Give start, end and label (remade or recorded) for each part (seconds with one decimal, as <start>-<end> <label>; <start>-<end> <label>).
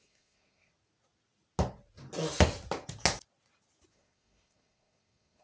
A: 0.0-0.7 remade; 0.7-3.9 recorded; 3.9-5.4 remade